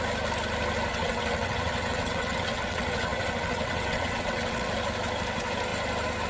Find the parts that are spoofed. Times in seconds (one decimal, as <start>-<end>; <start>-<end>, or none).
0.9-4.7